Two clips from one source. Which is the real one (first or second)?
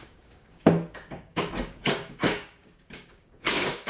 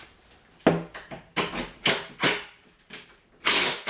second